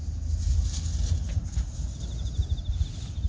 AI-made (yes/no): no